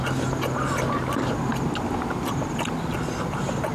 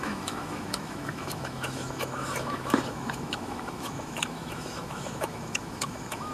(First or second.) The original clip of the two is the first